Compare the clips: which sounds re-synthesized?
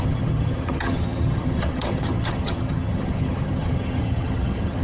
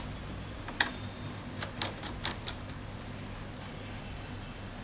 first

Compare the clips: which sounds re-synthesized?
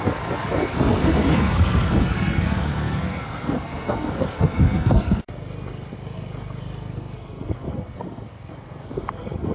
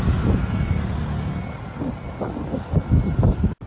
first